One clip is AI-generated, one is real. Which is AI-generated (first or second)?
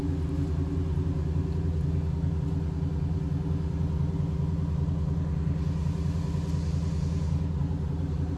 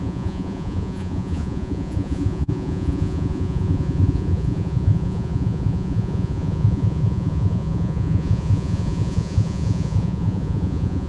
second